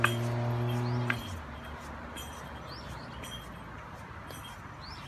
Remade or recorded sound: recorded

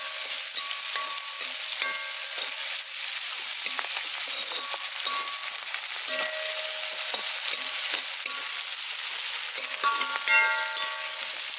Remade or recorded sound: recorded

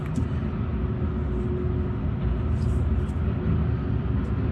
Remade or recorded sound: recorded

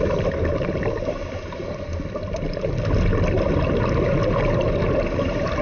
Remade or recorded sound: recorded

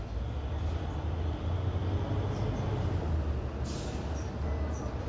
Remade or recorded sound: recorded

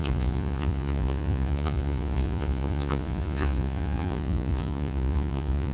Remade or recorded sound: remade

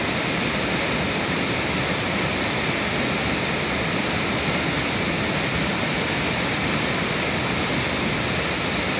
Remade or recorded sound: recorded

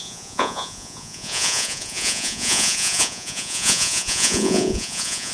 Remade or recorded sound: remade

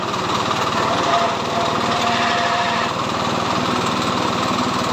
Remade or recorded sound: remade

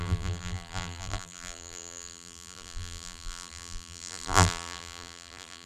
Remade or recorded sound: remade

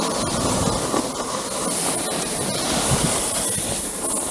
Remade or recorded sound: recorded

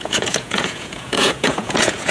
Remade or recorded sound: remade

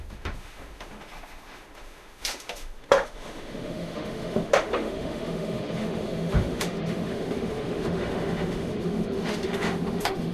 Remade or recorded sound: remade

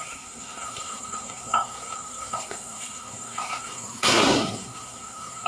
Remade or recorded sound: remade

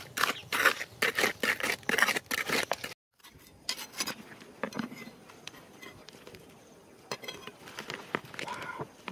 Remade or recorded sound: recorded